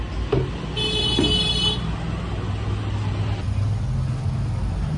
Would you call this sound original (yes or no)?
yes